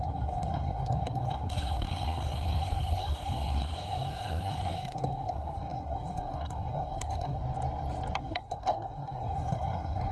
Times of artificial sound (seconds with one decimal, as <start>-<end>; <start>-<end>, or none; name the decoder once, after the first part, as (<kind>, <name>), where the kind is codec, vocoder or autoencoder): 0.0-7.4 (codec, SNAC); 8.2-10.1